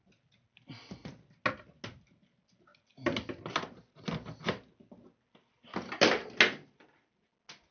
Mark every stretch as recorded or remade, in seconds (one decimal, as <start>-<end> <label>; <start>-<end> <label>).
0.0-7.7 recorded